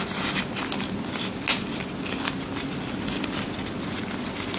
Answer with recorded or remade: recorded